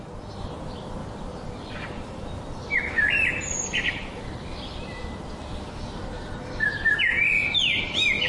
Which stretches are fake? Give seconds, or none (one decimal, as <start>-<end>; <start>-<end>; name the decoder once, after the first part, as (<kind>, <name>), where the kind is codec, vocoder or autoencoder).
1.0-4.2 (vocoder, BigVGAN v2)